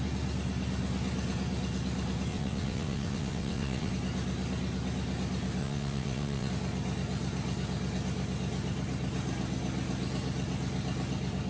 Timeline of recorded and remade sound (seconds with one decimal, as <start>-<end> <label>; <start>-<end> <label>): 0.0-2.3 recorded; 2.3-3.9 remade; 3.9-5.6 recorded; 5.6-6.5 remade; 6.5-11.5 recorded